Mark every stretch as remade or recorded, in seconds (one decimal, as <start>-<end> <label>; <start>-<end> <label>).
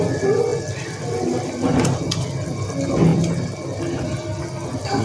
0.0-5.0 recorded